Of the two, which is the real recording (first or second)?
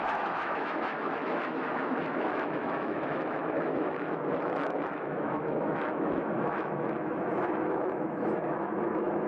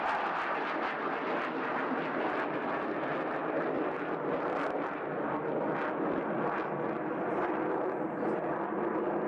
second